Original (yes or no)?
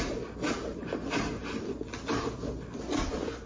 yes